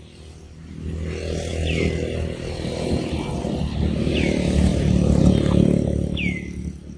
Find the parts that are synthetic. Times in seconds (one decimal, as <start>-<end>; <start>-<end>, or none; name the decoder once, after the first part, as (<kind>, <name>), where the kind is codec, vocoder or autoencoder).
none